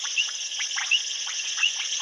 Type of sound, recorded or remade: remade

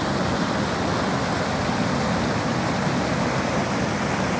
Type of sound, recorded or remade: recorded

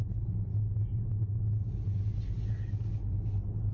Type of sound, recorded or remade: recorded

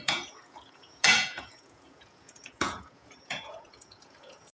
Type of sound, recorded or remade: remade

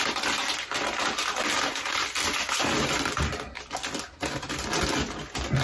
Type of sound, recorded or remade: recorded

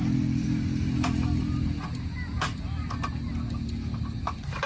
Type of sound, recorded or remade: recorded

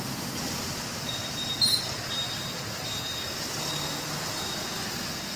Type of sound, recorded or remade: recorded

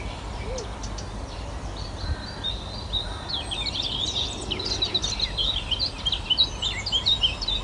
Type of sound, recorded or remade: recorded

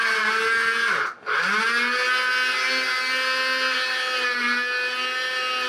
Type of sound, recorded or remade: recorded